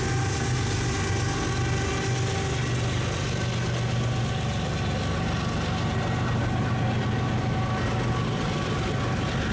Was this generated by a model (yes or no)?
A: no